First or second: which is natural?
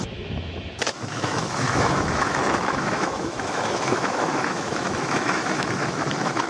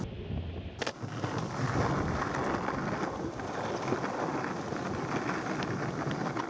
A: second